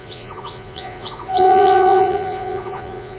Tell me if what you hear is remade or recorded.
remade